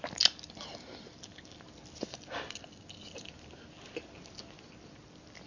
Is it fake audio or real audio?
real